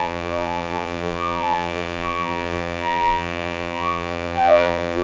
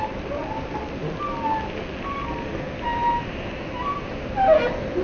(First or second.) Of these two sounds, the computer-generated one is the first